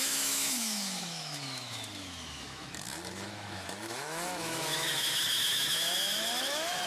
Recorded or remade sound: remade